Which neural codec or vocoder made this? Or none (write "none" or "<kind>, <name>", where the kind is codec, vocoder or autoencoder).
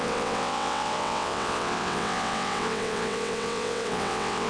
vocoder, WaveNeXt